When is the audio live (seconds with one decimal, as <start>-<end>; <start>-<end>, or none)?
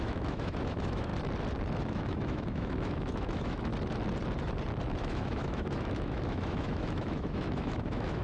1.1-1.8; 3.7-4.9